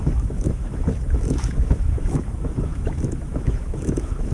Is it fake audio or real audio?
fake